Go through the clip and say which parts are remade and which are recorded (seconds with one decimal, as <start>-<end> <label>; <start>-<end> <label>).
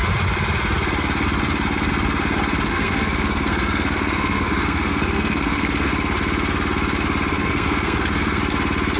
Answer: 0.0-2.7 recorded; 2.7-5.9 remade; 5.9-7.3 recorded; 7.3-8.4 remade; 8.4-9.0 recorded